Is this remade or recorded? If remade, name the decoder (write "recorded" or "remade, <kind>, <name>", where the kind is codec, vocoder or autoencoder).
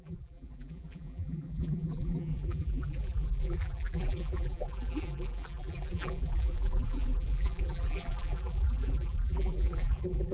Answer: remade, vocoder, BigVGAN v2